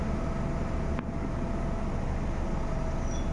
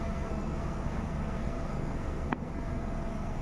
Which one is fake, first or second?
second